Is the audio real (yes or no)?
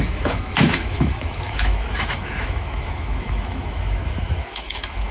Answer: no